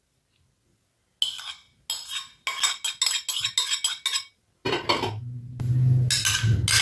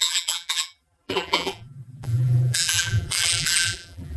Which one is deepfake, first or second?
second